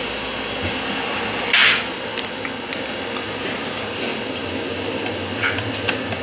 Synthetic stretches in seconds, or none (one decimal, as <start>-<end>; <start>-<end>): none